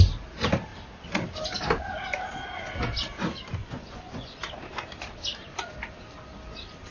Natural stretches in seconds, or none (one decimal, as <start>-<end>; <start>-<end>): 0.0-3.6; 4.4-6.9